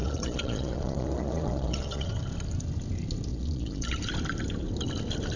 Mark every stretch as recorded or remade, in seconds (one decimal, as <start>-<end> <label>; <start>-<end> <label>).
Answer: 0.0-2.1 remade; 2.1-3.3 recorded; 3.3-3.9 remade; 3.9-5.4 recorded